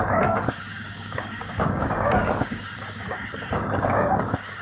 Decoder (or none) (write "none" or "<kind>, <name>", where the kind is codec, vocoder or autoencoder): codec, DAC